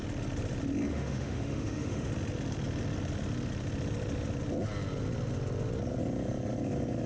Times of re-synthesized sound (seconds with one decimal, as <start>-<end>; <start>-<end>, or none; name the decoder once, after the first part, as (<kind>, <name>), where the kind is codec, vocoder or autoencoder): 0.9-2.1 (autoencoder, DAC-VAE)